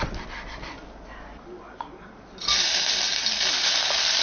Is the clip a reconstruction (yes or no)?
no